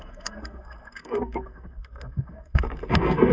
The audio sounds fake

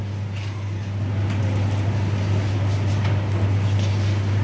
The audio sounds real